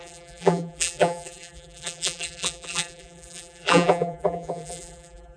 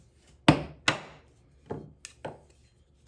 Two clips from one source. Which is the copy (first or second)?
first